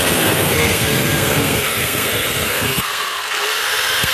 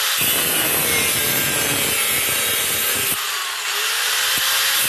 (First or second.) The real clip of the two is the second